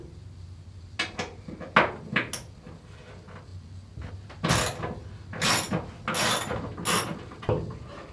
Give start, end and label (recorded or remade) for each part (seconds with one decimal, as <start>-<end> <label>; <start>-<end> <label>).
0.0-8.1 recorded